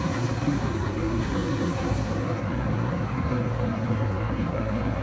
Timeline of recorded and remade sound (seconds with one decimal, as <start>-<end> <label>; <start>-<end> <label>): 0.0-5.0 remade